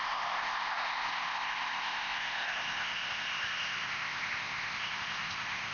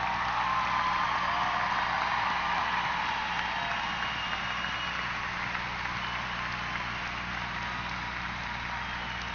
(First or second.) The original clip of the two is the second